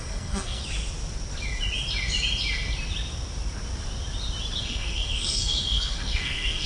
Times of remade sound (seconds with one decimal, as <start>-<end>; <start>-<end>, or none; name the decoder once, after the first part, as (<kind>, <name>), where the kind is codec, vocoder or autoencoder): 0.0-0.6 (codec, SNAC); 4.6-6.7